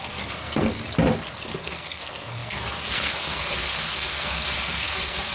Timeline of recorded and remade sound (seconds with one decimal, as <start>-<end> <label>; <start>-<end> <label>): 0.0-0.8 remade; 0.8-1.3 recorded; 1.3-5.3 remade